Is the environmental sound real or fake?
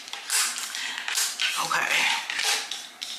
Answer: real